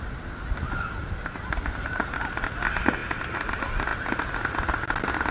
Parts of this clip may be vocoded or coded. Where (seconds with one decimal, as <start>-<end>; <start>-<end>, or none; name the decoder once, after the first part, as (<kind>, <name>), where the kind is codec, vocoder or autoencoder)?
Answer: 1.0-2.0 (vocoder, BigVGAN v2); 3.9-4.6